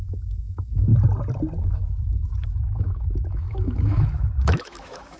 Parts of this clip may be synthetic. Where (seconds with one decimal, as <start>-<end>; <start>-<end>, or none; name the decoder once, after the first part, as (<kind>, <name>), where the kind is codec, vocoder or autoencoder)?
0.0-0.9 (autoencoder, DAC-VAE); 1.6-5.2